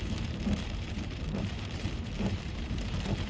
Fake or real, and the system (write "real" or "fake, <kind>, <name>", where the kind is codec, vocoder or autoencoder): fake, vocoder, BigVGAN v2